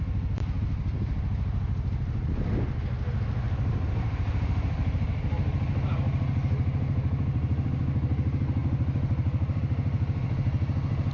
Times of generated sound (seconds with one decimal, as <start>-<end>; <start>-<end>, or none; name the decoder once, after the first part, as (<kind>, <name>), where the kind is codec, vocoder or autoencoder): none